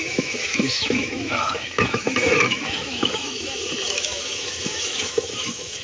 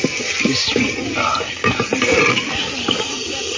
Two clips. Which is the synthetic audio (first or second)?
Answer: first